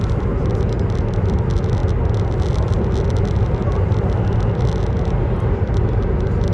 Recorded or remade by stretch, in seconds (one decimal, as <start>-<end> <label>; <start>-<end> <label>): 0.0-6.5 recorded